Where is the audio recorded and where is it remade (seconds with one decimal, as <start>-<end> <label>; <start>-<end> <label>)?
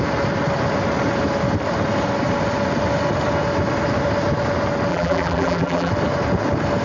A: 0.0-4.9 recorded; 4.9-5.9 remade; 5.9-6.8 recorded